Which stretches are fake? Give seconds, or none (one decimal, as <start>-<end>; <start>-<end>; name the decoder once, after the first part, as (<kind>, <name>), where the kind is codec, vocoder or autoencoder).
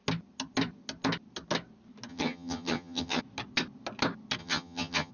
2.1-3.2 (vocoder, HiFi-GAN); 4.4-5.1